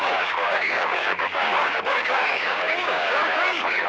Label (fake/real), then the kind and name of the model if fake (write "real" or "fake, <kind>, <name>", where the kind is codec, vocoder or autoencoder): fake, codec, DAC